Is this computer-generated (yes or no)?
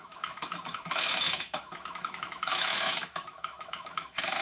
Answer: yes